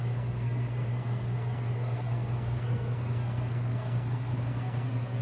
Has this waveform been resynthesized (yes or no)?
yes